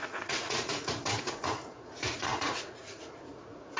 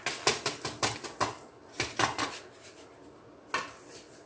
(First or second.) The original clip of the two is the second